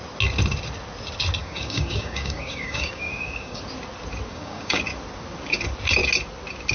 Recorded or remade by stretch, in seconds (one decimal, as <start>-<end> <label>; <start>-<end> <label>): 0.0-1.4 recorded; 1.4-3.6 remade; 3.6-4.3 recorded; 4.3-4.8 remade; 4.8-6.7 recorded